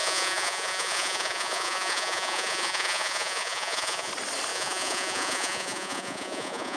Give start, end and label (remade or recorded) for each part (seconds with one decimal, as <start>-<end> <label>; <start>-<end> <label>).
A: 0.0-4.1 remade; 4.1-4.5 recorded; 4.5-6.8 remade